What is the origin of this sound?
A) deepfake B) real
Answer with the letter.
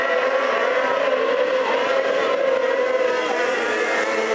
A